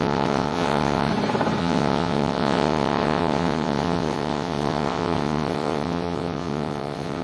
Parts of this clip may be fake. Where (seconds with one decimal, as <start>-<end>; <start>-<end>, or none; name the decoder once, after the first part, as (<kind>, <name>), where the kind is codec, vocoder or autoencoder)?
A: 0.0-1.1 (vocoder, WaveNeXt); 1.6-7.2